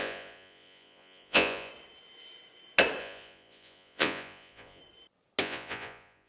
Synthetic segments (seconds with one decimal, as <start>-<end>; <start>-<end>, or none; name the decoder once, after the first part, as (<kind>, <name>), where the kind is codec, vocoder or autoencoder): 0.0-1.7 (vocoder, Vocos); 3.0-4.8; 5.4-6.3